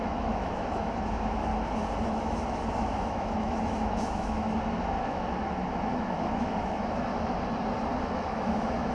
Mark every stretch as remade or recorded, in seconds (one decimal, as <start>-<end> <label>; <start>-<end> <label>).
0.0-1.5 remade; 1.5-2.1 recorded; 2.1-7.1 remade; 7.1-8.0 recorded; 8.0-8.9 remade